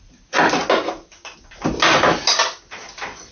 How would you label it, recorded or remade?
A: recorded